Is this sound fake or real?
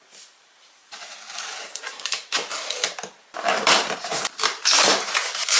fake